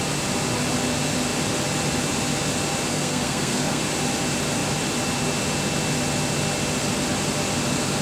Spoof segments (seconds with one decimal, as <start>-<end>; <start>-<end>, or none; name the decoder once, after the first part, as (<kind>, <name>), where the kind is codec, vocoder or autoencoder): 2.9-3.8 (codec, SNAC)